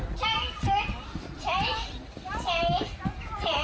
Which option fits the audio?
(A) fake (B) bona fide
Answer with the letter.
B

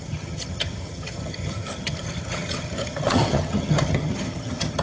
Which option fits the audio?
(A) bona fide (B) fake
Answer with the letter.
B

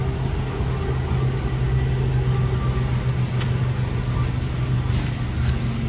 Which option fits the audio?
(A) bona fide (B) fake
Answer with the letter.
A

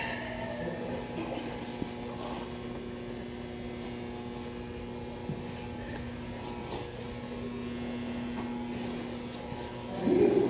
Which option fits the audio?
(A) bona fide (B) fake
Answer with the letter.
A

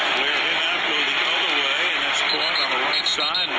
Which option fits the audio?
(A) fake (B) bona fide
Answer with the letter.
B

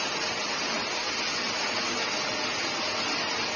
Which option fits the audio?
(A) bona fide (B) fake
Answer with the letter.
A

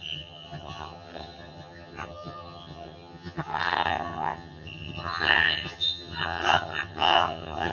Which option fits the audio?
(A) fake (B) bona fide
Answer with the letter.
A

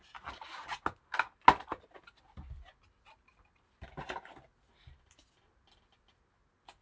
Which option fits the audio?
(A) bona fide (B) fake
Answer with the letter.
A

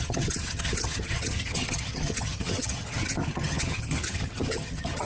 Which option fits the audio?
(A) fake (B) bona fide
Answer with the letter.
A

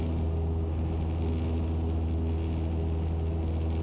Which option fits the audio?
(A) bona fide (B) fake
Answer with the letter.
A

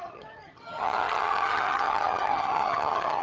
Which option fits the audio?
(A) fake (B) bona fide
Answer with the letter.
A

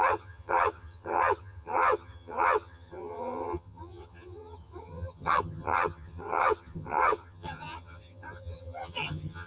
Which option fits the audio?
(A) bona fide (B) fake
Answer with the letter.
B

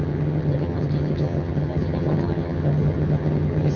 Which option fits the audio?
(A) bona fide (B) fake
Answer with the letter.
B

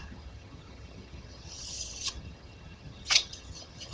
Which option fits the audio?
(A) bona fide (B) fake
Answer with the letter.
B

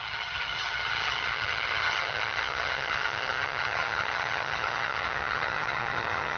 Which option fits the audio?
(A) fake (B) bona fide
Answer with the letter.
A